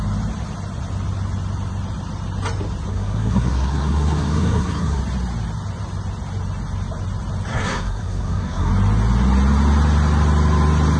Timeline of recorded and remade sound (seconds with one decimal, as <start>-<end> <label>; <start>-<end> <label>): 0.0-2.9 recorded; 2.9-5.0 remade; 5.0-7.5 recorded; 7.5-8.7 remade; 8.7-11.0 recorded